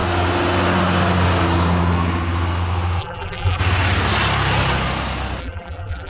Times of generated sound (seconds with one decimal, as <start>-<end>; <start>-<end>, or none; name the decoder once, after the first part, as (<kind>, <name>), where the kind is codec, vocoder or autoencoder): 3.0-3.6 (vocoder, BigVGAN v2); 5.4-6.1